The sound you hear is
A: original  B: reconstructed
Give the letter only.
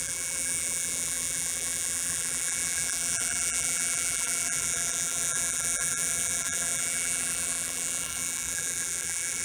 B